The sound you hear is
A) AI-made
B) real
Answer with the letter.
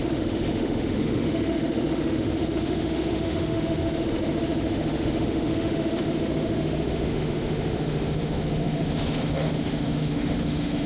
A